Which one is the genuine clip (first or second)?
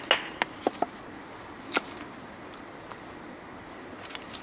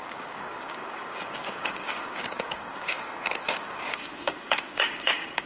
first